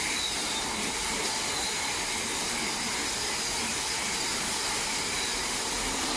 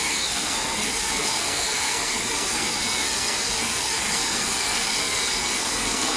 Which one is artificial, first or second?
second